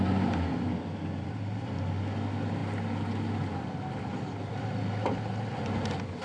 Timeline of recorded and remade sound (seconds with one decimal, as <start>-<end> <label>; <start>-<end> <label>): 0.0-6.2 recorded